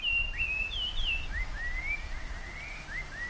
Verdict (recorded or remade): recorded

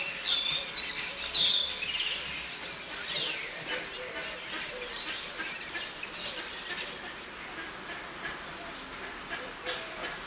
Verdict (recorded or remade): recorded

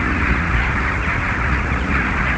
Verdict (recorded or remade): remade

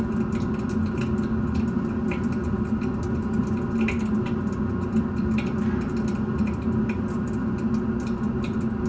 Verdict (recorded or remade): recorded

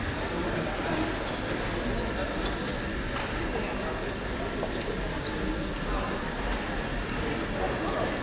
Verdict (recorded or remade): recorded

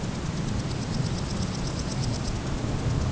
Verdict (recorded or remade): recorded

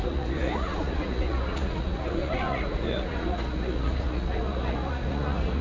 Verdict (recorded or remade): remade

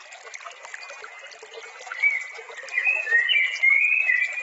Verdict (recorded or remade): recorded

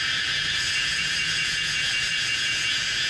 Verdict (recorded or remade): remade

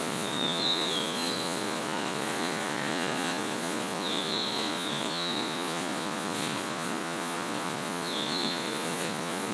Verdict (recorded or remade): remade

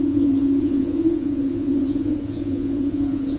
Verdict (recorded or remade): remade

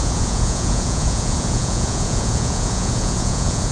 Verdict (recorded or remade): remade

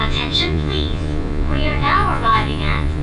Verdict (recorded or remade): remade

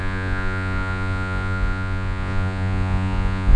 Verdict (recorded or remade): remade